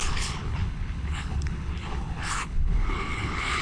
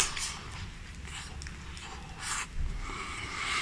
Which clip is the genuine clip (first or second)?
second